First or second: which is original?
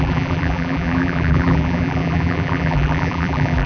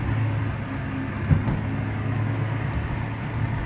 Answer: second